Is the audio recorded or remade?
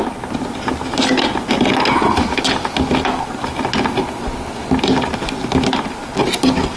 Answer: recorded